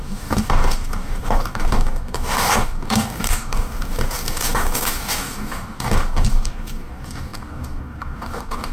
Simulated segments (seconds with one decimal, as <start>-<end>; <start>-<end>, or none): 0.0-8.7